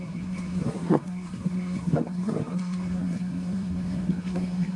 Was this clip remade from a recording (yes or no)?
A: yes